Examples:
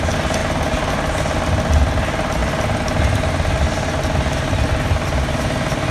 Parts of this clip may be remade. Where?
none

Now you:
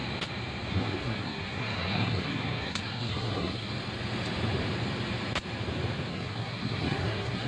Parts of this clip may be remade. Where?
0.7-3.7 (codec, SNAC); 6.1-7.5